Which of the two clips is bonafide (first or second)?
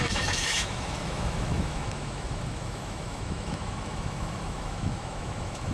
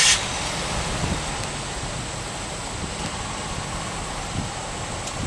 second